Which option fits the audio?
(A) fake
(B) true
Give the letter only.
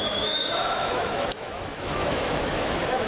A